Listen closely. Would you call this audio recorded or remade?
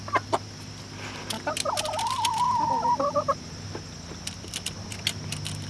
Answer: recorded